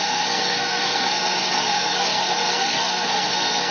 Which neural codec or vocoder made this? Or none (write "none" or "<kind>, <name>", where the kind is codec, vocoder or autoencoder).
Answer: codec, SNAC